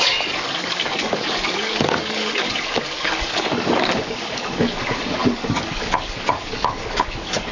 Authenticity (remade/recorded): remade